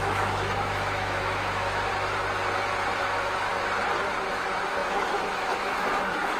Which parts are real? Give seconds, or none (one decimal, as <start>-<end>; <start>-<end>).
1.9-3.0; 3.5-4.3